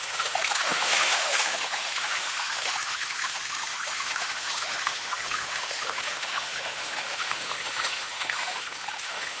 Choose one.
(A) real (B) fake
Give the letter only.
B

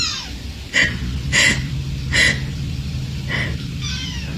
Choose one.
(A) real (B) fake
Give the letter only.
A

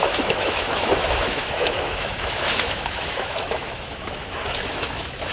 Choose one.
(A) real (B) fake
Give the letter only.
B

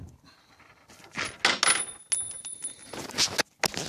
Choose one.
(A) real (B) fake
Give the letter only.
A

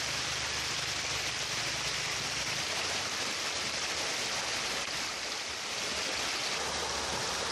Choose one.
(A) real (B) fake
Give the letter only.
A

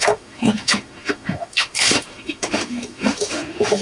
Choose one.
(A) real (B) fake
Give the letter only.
B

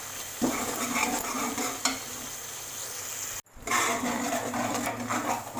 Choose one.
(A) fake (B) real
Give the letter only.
B